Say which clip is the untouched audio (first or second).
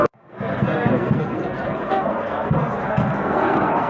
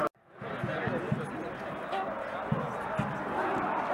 second